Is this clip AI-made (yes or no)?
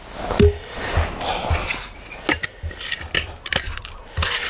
no